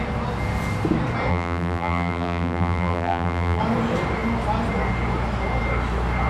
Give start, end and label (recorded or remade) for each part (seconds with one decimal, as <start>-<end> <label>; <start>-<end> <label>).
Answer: 0.0-1.3 recorded; 1.3-3.6 remade; 3.6-6.3 recorded